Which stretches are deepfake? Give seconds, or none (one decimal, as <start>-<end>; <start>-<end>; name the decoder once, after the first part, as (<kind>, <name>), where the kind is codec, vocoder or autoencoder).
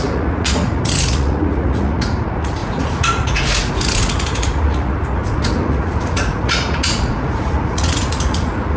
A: 0.0-8.8 (vocoder, Vocos)